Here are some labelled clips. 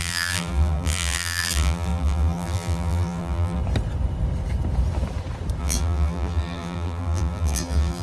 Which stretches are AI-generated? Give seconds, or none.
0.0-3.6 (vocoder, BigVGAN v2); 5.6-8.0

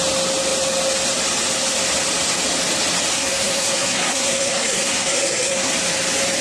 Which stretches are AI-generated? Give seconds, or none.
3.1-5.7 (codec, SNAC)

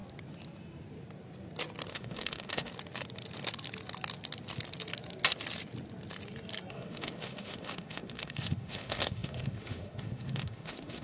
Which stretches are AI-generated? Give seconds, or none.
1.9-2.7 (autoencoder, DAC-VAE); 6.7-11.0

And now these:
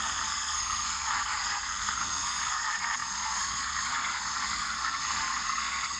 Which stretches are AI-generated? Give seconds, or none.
0.0-6.0 (codec, SNAC)